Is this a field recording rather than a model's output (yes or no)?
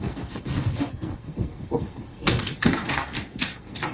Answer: no